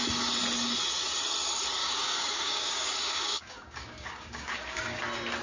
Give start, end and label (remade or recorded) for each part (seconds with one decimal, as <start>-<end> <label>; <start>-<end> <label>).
0.0-1.8 recorded; 1.8-5.0 remade; 5.0-5.4 recorded